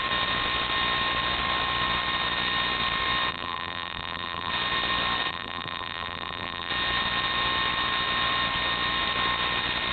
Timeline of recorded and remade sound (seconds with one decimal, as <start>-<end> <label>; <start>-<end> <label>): 0.0-3.3 recorded; 3.3-4.5 remade; 4.5-5.3 recorded; 5.3-6.7 remade; 6.7-9.9 recorded

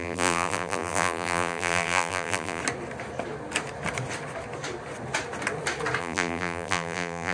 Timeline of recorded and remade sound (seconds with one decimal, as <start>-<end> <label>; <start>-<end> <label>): 0.0-2.6 remade; 2.6-6.0 recorded; 6.0-7.3 remade